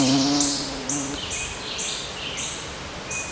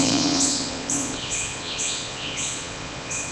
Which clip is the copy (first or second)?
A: second